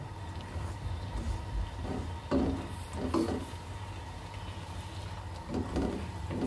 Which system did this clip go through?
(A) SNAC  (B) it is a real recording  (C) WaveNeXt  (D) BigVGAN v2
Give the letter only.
B